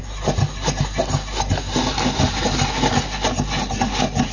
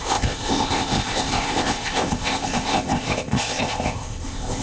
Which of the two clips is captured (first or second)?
first